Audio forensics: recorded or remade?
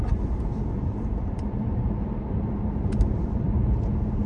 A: remade